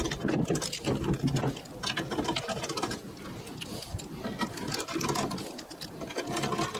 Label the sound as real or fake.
real